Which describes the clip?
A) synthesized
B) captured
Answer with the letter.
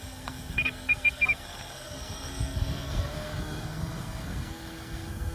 A